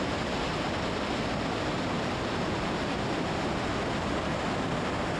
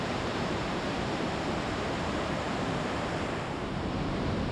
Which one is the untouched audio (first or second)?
first